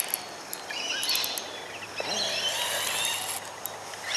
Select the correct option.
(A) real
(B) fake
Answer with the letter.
A